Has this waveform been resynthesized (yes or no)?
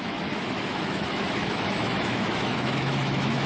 yes